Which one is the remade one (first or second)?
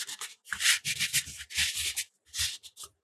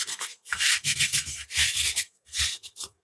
second